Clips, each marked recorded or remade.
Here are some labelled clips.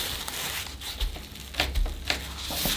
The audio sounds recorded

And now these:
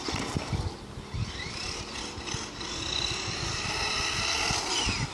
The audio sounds recorded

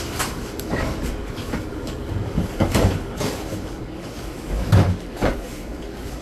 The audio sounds remade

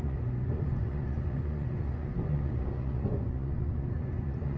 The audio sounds remade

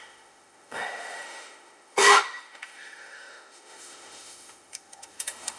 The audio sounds remade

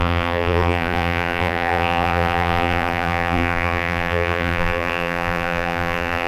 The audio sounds remade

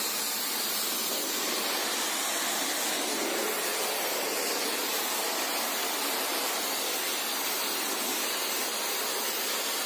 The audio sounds recorded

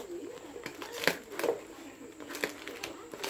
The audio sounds recorded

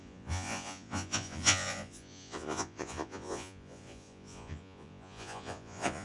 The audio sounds remade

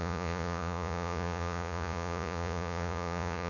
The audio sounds remade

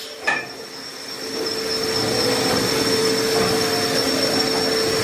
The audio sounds recorded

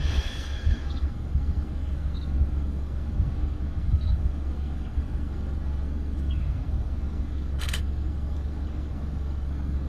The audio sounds remade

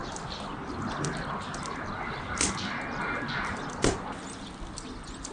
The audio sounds recorded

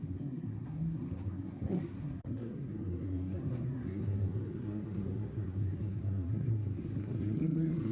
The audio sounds remade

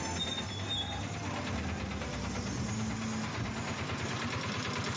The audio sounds recorded